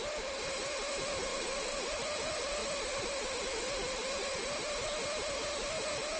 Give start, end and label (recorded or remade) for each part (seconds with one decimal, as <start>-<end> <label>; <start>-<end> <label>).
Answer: 0.0-1.3 recorded; 1.3-1.9 remade; 1.9-6.2 recorded